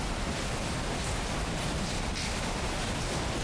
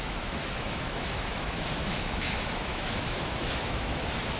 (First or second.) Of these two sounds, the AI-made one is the second